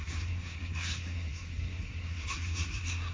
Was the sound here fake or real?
fake